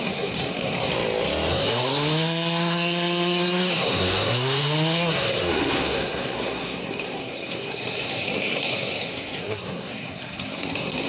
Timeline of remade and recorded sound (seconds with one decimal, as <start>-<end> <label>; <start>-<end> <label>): 0.0-0.9 remade; 0.9-1.5 recorded; 1.5-11.1 remade